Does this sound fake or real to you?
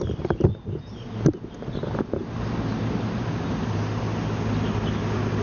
real